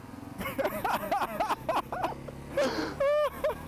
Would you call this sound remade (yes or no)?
no